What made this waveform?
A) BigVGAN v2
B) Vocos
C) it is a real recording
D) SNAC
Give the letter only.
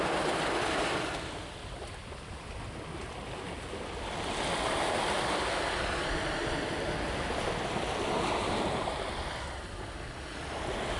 C